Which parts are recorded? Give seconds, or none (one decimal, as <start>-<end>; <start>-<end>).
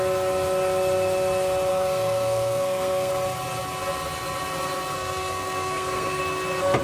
0.0-1.7; 3.1-4.9; 6.2-6.8